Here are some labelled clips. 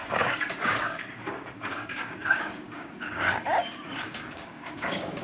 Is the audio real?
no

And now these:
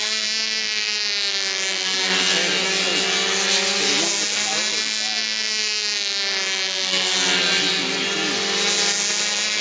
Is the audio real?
yes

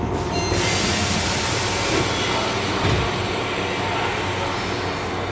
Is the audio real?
yes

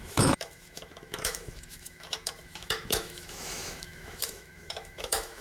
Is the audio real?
no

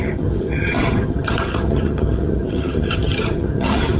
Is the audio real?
no